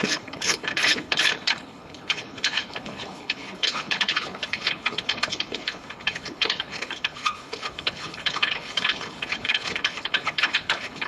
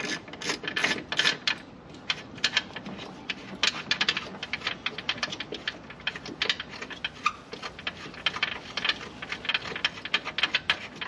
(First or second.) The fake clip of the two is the first